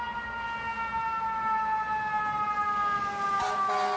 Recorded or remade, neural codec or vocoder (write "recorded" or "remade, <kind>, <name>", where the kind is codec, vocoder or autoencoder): recorded